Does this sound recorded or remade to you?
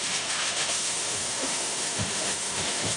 remade